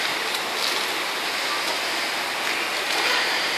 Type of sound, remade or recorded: recorded